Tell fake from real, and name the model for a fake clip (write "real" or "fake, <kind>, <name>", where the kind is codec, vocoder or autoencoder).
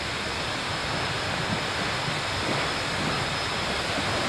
real